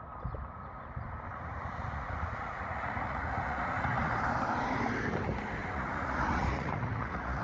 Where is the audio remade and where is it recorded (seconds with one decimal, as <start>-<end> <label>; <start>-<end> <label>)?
0.0-1.3 recorded; 1.3-4.1 remade; 4.1-5.6 recorded; 5.6-7.4 remade